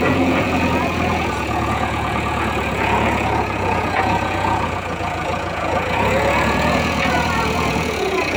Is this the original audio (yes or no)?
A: no